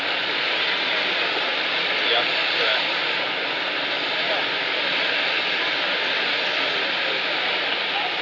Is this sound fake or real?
real